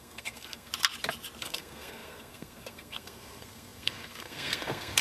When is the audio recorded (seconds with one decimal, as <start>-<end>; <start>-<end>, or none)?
0.7-1.4